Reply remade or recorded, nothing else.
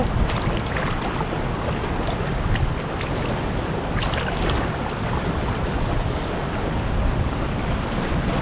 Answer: recorded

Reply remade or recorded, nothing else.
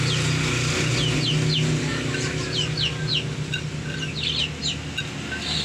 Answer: recorded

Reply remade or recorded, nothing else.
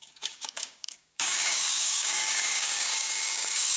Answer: remade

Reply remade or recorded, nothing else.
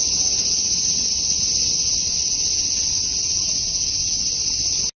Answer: recorded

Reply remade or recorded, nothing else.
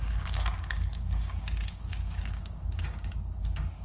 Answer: remade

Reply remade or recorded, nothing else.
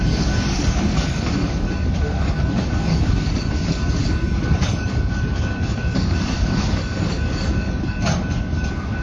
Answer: remade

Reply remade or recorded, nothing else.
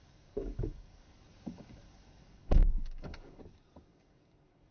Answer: remade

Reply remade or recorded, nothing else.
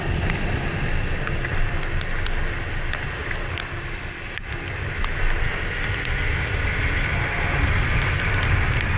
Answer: recorded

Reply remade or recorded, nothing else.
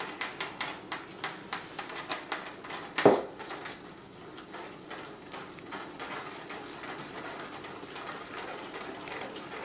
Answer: recorded